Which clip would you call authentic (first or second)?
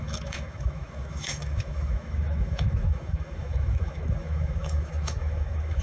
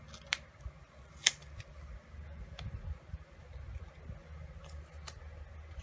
second